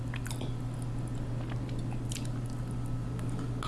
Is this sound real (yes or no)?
yes